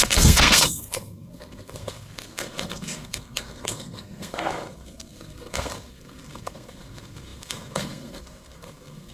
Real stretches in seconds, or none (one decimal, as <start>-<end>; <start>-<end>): none